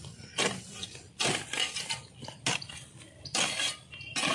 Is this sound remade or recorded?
recorded